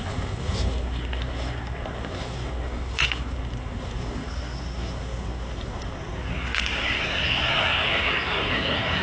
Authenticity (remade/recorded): remade